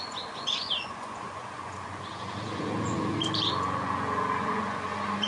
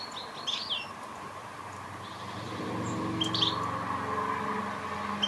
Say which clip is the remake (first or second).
first